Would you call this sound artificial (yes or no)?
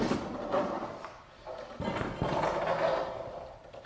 no